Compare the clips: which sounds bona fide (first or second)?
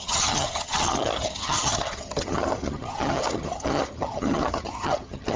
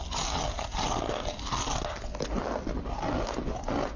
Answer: second